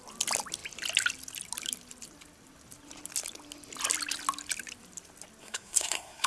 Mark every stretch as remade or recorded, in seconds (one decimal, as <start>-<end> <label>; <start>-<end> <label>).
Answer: 0.0-5.4 recorded; 5.4-6.3 remade